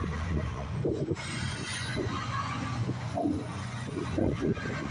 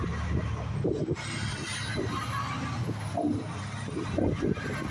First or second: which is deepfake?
first